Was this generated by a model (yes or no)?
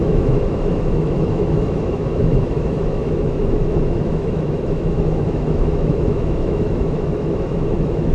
yes